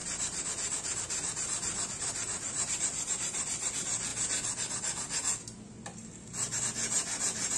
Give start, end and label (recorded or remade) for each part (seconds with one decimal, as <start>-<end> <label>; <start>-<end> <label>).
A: 0.0-7.6 recorded